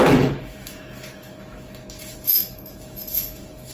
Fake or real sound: fake